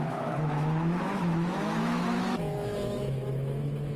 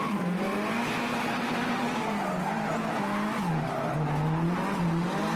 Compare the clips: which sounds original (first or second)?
second